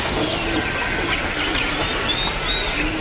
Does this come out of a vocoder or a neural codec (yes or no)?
no